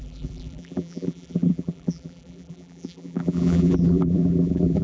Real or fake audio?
fake